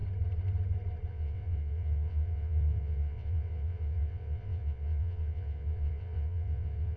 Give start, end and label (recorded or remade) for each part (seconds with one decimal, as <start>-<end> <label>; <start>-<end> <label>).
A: 0.0-1.1 recorded; 1.1-7.0 remade